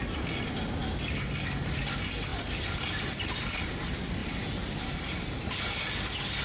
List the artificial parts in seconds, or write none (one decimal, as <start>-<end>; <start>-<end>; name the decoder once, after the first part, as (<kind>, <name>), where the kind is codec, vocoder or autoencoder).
4.2-5.5 (vocoder, BigVGAN v2)